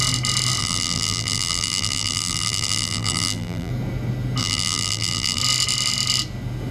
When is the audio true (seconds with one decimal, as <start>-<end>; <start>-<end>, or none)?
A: 0.0-0.6; 3.7-4.4; 5.4-6.7